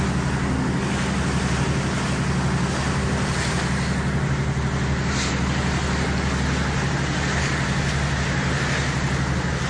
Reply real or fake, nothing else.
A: real